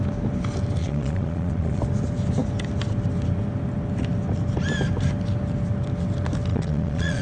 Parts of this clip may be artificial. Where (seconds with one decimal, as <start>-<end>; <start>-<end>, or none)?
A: 0.8-1.8; 6.5-7.2